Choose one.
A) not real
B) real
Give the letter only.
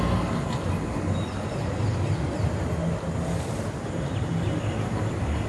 B